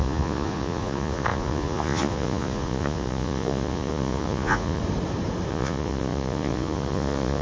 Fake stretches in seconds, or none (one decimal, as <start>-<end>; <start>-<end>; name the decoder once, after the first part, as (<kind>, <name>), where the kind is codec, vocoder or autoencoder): 0.0-4.8 (vocoder, Vocos); 5.5-7.4